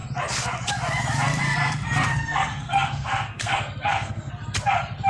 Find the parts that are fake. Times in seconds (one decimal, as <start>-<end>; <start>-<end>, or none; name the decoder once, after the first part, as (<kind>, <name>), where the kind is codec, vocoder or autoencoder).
2.1-4.3 (codec, SNAC)